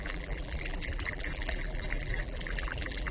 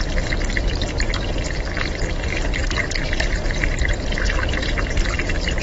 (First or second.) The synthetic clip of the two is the first